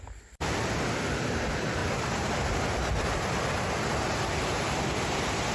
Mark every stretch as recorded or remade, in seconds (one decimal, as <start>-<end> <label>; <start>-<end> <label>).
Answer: 0.0-5.5 recorded

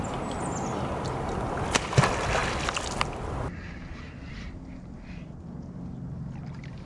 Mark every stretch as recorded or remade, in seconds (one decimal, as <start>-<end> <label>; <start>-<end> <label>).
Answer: 0.0-6.9 recorded

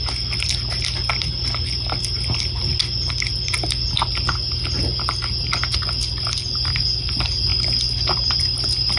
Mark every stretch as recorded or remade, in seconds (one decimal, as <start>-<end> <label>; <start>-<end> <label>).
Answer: 0.0-9.0 recorded

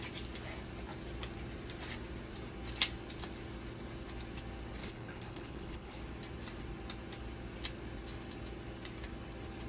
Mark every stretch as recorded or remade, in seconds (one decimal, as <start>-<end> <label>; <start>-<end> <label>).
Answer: 0.0-4.8 recorded; 4.8-6.0 remade; 6.0-9.7 recorded

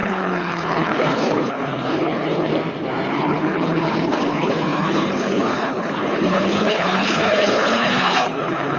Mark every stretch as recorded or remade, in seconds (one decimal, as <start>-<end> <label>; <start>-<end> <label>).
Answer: 0.0-2.5 remade; 2.5-3.1 recorded; 3.1-8.8 remade

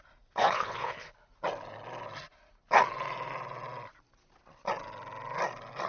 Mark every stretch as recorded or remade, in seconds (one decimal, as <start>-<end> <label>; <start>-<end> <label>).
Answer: 0.0-0.4 recorded; 0.4-1.3 remade; 1.3-5.9 recorded

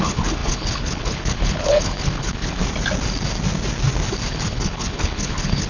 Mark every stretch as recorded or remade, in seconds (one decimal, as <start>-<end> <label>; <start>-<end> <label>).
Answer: 0.0-2.6 remade; 2.6-4.3 recorded; 4.3-5.7 remade